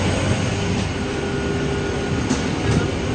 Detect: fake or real real